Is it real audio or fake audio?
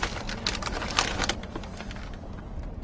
real